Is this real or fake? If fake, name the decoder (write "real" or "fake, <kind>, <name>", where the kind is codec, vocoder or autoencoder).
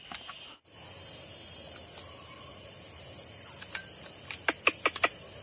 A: real